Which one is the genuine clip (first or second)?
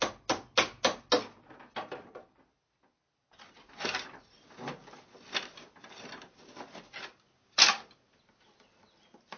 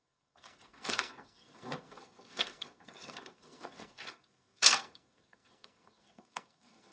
first